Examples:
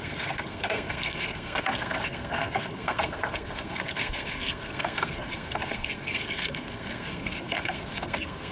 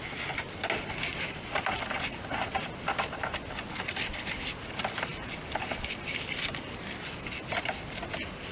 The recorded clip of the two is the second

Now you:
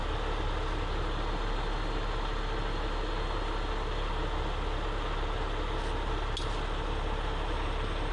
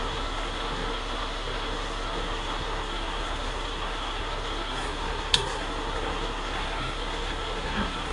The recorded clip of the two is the first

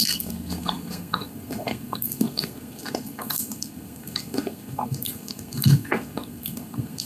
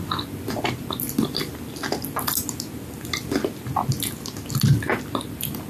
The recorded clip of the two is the second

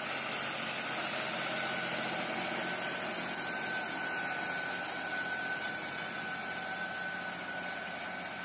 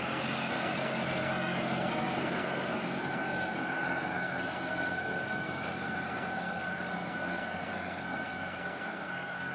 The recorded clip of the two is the first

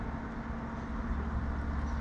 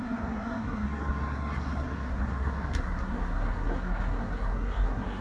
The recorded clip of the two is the first